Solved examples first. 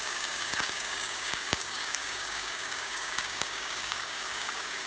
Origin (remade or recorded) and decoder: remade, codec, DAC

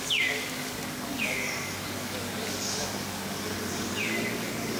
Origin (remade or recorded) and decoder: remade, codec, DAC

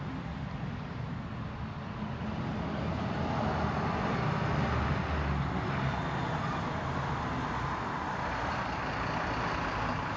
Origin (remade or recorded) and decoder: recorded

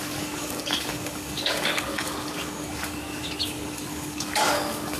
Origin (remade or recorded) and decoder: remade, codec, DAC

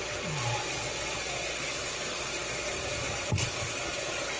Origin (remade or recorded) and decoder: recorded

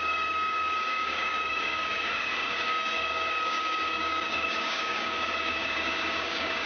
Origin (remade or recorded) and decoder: remade, codec, DAC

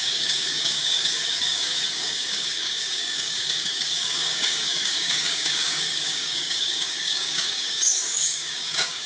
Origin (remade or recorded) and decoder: remade, codec, DAC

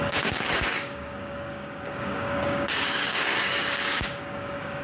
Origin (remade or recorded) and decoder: remade, codec, DAC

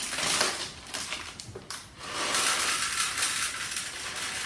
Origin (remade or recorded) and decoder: recorded